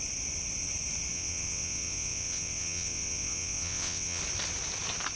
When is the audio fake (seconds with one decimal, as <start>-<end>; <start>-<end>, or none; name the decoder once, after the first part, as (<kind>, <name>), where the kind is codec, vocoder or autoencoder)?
1.1-4.2 (vocoder, WaveNeXt)